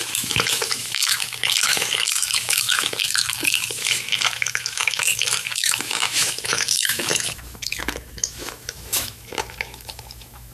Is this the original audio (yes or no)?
no